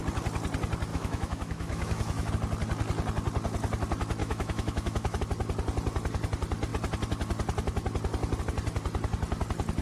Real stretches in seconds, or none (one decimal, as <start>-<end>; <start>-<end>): 0.0-0.9; 2.3-4.2; 5.2-9.8